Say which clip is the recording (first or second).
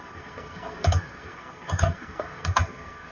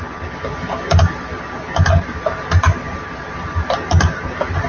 second